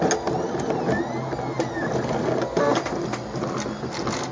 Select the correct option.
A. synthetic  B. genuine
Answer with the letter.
B